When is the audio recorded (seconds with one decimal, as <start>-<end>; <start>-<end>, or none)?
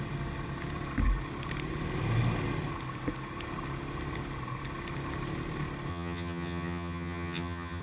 0.0-5.9